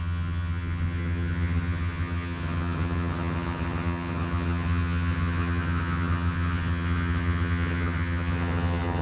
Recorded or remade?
remade